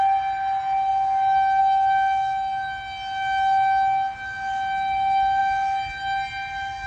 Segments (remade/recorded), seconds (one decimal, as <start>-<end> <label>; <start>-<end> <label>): 0.0-6.9 recorded